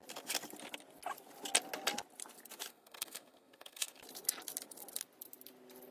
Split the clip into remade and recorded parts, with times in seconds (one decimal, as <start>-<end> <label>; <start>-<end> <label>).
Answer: 0.0-2.7 recorded; 2.7-4.0 remade; 4.0-5.9 recorded